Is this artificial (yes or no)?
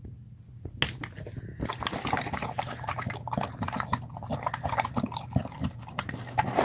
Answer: no